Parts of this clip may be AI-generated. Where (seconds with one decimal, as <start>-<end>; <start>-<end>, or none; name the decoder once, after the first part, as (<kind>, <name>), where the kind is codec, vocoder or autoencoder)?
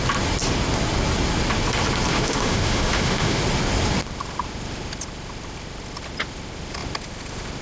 2.1-3.4 (autoencoder, DAC-VAE)